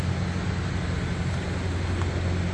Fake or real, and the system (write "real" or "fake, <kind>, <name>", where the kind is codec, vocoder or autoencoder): real